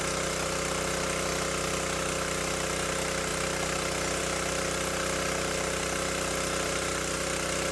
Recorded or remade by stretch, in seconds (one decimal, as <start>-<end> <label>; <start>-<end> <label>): 0.0-7.7 recorded